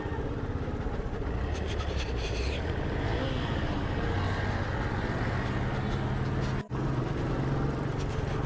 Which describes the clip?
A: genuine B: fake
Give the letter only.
A